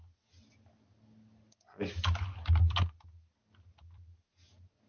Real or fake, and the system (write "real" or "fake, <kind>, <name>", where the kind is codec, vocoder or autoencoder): real